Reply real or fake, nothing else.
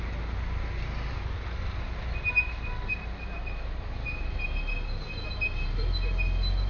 real